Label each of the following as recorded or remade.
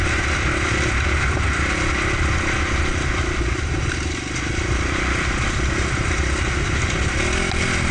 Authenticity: recorded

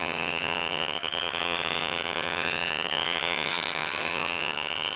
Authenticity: remade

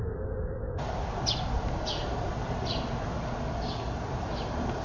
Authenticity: recorded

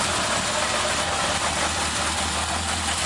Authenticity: recorded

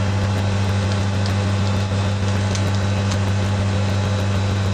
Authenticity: recorded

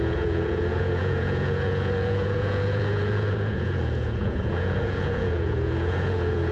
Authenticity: remade